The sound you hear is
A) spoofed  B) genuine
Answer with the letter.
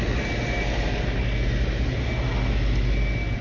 B